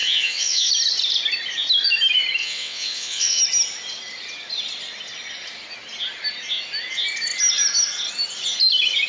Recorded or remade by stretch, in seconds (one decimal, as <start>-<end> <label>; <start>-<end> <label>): 0.0-0.7 remade; 0.7-2.4 recorded; 2.4-3.4 remade; 3.4-9.1 recorded